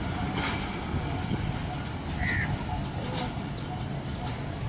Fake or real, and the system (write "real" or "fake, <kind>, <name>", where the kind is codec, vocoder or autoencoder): real